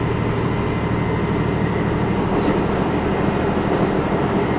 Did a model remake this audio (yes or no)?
no